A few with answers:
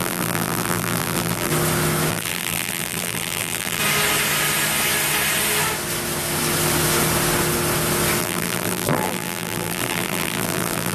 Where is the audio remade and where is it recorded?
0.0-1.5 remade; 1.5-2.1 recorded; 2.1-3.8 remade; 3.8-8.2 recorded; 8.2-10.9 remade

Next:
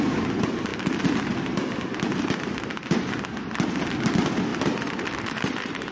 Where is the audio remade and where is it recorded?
0.0-4.5 recorded; 4.5-5.9 remade

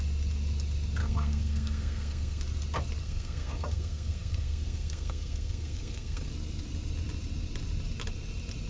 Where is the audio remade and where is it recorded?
0.0-1.0 recorded; 1.0-2.4 remade; 2.4-3.0 recorded; 3.0-6.3 remade; 6.3-8.7 recorded

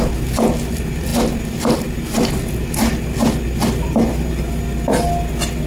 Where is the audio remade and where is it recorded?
0.0-5.7 recorded